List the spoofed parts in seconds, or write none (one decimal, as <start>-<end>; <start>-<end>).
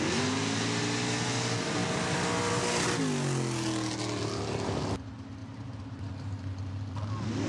5.4-6.1